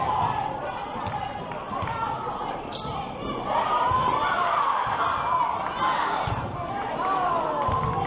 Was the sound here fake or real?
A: fake